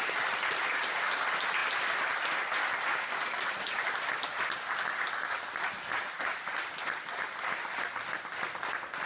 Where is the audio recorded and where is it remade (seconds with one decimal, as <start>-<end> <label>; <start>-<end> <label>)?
0.0-9.1 recorded